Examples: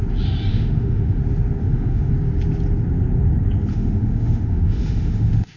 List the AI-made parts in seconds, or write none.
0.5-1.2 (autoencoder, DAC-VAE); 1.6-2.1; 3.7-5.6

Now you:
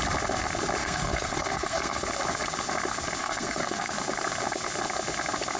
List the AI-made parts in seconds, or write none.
0.8-2.0 (codec, SNAC); 3.2-3.9

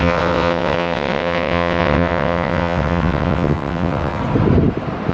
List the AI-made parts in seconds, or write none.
0.0-4.2 (vocoder, WaveNeXt)